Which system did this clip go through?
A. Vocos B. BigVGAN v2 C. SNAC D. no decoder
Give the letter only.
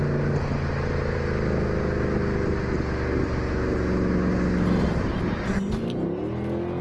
D